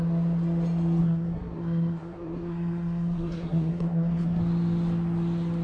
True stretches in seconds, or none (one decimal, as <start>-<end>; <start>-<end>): 0.0-1.0; 4.4-5.6